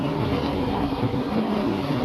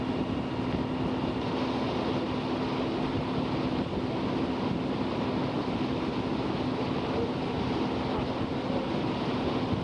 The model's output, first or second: first